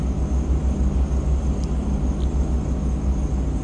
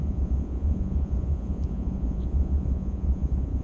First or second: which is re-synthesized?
second